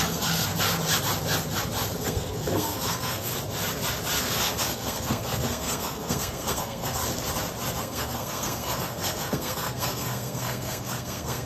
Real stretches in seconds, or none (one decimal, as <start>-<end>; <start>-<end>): 0.5-2.0; 3.3-4.2; 7.0-7.8